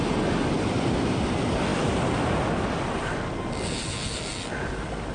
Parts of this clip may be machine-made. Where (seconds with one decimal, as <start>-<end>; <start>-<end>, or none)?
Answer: none